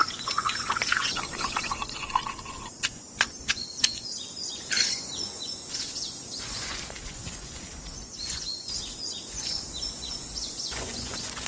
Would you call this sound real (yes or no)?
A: no